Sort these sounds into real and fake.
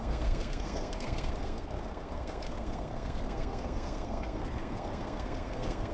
fake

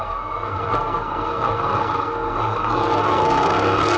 fake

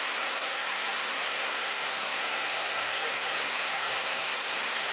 fake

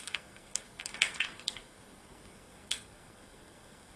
fake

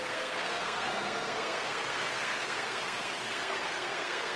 fake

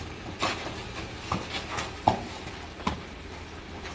real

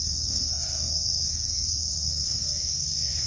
fake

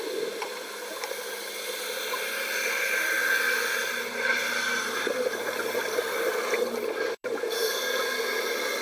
real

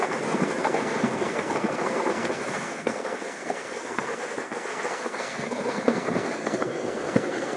fake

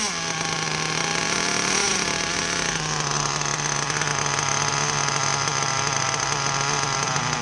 real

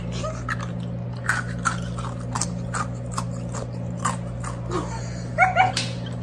real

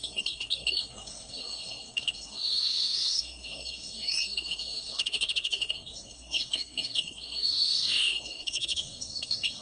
fake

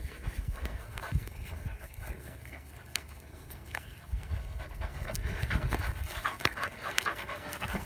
fake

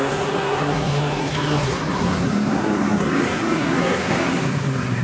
fake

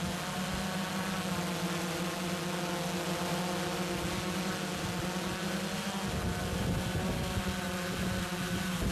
real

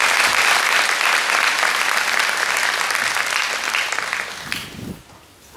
real